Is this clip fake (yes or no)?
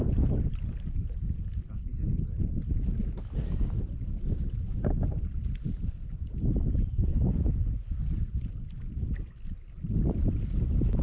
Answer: no